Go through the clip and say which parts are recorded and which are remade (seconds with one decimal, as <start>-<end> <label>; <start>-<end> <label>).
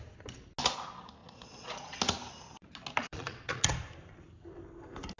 0.0-1.2 recorded; 1.2-2.0 remade; 2.0-3.0 recorded; 3.0-3.7 remade; 3.7-5.2 recorded